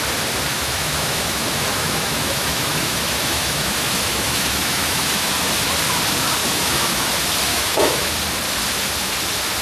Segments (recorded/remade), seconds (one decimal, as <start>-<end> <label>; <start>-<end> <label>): 0.0-0.5 recorded; 0.5-5.3 remade; 5.3-6.4 recorded; 6.4-7.1 remade; 7.1-7.5 recorded; 7.5-8.1 remade; 8.1-9.6 recorded